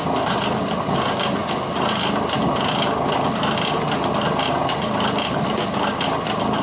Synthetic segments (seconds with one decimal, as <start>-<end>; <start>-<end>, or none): none

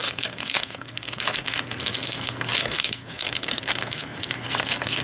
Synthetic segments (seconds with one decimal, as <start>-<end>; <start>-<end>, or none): 0.0-5.0

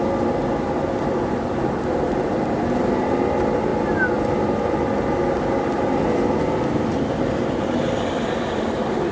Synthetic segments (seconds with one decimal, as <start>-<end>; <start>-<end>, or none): none

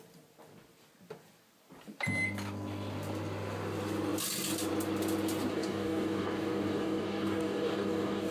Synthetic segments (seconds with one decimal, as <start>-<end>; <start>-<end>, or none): 5.5-8.3

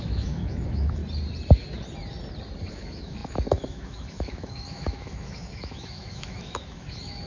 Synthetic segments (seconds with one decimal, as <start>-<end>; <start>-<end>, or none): 0.0-1.0; 2.7-7.3

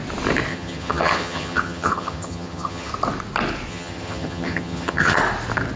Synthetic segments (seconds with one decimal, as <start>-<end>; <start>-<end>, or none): 0.5-2.9; 3.7-5.2